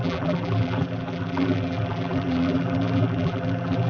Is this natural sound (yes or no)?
no